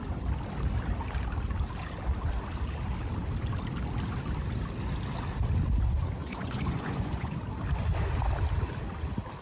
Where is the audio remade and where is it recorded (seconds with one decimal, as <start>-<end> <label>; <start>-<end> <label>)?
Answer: 0.0-6.2 recorded; 6.2-7.4 remade; 7.4-9.4 recorded